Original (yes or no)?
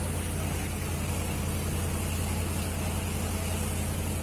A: yes